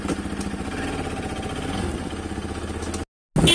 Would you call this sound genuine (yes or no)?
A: yes